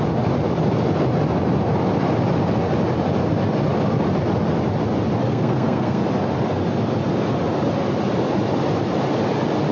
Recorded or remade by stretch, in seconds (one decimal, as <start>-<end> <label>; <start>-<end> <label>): 0.0-5.3 recorded; 5.3-6.0 remade; 6.0-9.7 recorded